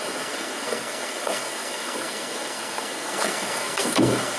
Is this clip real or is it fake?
fake